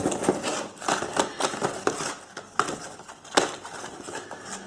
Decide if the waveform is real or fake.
real